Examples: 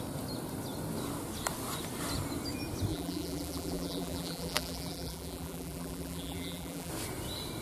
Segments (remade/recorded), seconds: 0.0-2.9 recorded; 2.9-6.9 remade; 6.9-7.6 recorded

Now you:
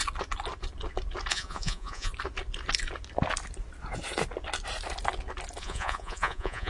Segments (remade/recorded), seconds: 0.0-1.3 recorded; 1.3-2.1 remade; 2.1-5.6 recorded; 5.6-6.7 remade

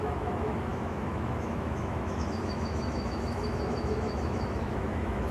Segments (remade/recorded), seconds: 0.0-5.3 remade

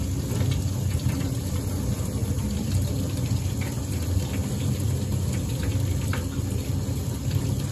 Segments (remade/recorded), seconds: 0.0-7.7 remade

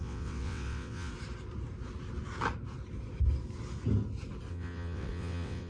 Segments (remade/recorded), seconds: 0.0-1.1 remade; 1.1-4.5 recorded; 4.5-5.7 remade

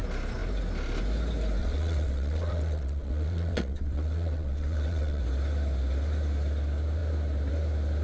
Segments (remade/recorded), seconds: 0.0-1.6 recorded; 1.6-5.2 remade; 5.2-8.0 recorded

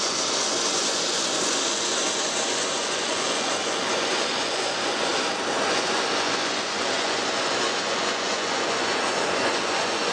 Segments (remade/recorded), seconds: 0.0-5.1 remade; 5.1-5.7 recorded; 5.7-10.1 remade

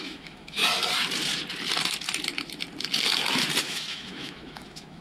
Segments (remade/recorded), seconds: 0.0-0.6 remade; 0.6-3.6 recorded; 3.6-5.0 remade